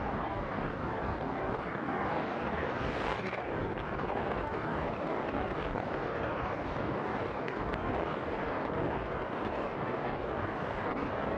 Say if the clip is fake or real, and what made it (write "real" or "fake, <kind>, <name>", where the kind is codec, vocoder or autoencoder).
fake, codec, DAC